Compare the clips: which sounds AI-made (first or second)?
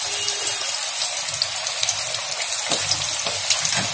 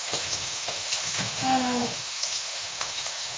second